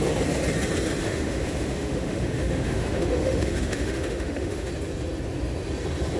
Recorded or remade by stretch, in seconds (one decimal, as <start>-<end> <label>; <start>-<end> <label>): 0.0-1.0 recorded; 1.0-4.7 remade; 4.7-6.2 recorded